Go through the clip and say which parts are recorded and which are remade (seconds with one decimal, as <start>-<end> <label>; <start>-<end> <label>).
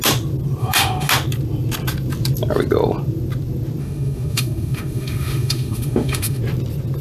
0.0-0.6 recorded; 0.6-1.1 remade; 1.1-3.8 recorded; 3.8-6.4 remade; 6.4-7.0 recorded